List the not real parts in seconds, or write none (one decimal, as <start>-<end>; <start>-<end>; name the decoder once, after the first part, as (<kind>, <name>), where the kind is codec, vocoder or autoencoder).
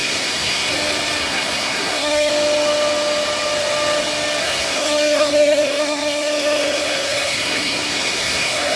0.0-0.7 (codec, SNAC); 1.2-2.3; 4.4-8.8